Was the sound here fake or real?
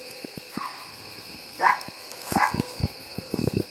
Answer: fake